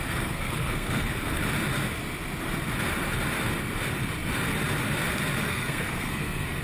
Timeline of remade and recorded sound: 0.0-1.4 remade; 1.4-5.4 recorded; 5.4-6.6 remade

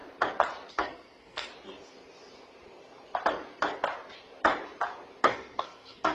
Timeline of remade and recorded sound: 0.0-0.7 recorded; 0.7-1.5 remade; 1.5-5.2 recorded; 5.2-6.1 remade

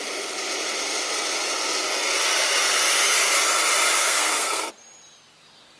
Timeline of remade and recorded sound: 0.0-4.0 recorded; 4.0-4.7 remade; 4.7-5.8 recorded

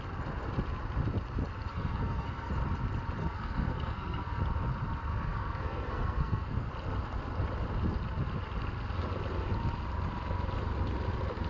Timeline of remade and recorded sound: 0.0-1.7 recorded; 1.7-2.5 remade; 2.5-3.2 recorded; 3.2-4.4 remade; 4.4-5.1 recorded; 5.1-6.7 remade; 6.7-11.5 recorded

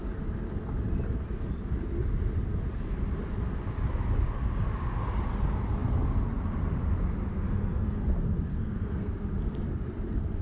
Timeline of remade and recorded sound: 0.0-7.3 recorded; 7.3-8.1 remade; 8.1-8.5 recorded; 8.5-9.1 remade; 9.1-10.4 recorded

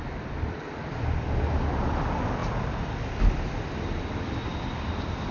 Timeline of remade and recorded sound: 0.0-5.3 recorded